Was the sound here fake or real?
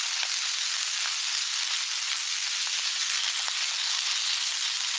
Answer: real